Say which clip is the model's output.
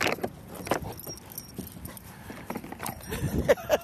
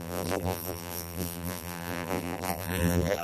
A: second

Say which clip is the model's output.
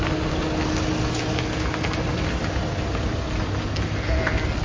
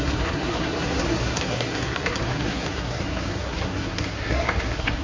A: second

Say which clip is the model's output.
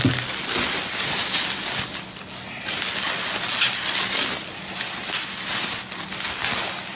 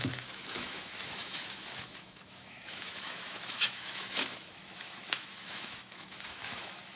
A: second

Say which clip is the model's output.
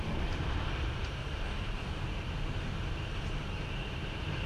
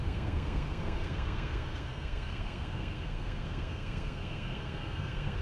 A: second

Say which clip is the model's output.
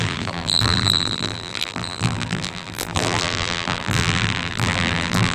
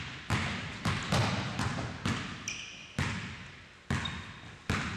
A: first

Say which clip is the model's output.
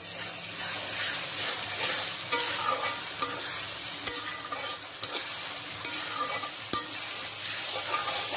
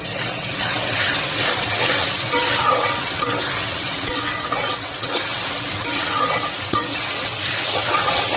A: second